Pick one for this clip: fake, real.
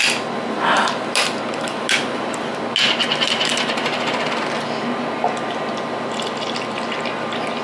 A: real